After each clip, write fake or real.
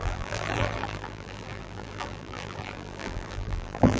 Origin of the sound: fake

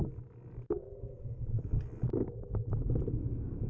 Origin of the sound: real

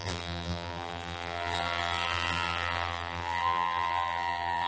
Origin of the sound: fake